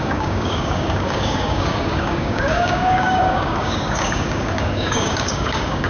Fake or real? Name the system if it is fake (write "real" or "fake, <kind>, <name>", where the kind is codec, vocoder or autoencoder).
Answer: fake, codec, DAC